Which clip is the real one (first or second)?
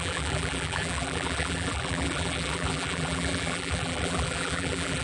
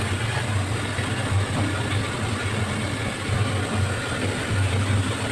second